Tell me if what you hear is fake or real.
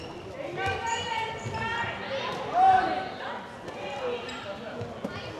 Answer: real